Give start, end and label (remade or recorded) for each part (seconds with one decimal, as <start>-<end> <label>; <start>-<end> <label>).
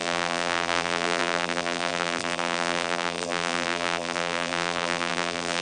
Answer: 0.0-5.6 remade